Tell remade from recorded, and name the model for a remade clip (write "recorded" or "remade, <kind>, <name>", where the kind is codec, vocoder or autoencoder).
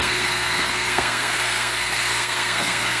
remade, codec, SNAC